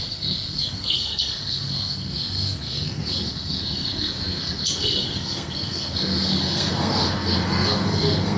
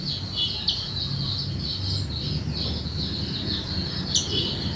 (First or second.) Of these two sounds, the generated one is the first